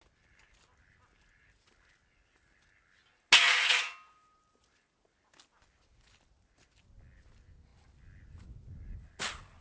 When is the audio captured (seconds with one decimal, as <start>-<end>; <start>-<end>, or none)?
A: 0.0-9.6